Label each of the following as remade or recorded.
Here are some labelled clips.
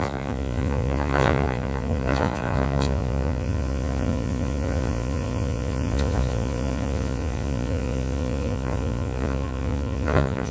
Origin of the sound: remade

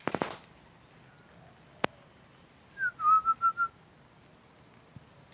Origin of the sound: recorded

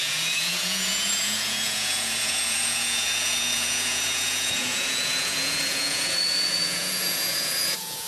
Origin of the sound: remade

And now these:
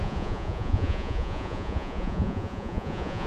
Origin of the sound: remade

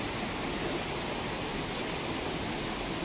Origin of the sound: recorded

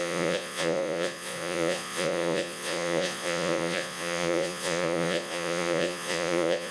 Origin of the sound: remade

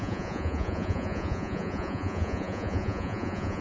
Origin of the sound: remade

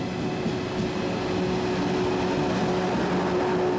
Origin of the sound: recorded